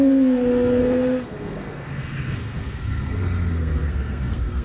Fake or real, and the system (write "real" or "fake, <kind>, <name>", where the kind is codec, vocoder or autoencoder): fake, codec, SNAC